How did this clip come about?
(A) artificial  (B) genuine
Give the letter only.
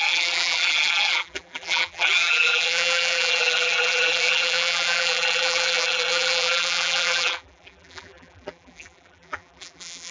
A